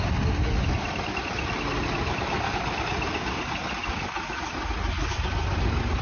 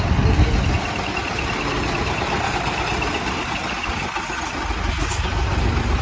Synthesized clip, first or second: first